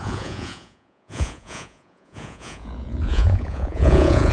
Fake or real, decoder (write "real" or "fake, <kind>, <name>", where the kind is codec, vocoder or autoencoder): fake, vocoder, Vocos